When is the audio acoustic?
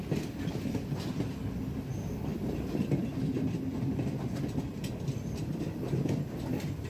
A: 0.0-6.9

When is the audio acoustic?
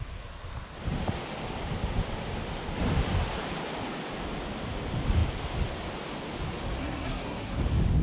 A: 0.0-6.8; 7.6-8.0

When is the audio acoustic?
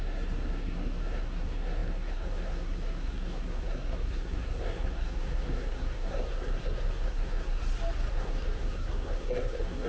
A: 7.6-8.1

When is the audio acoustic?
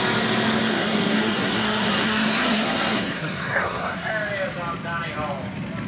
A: 0.0-0.7; 4.1-5.9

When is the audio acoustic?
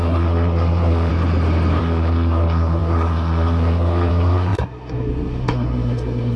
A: 1.1-1.8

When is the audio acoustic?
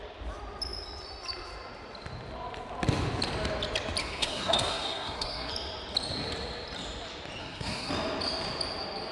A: 0.0-4.0; 5.5-7.4; 7.9-9.1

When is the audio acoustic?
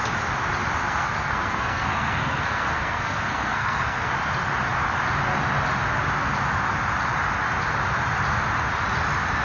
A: 0.0-0.8; 4.1-9.4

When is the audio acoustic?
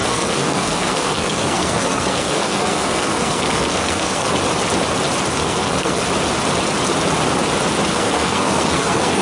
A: 4.3-5.4; 6.0-7.9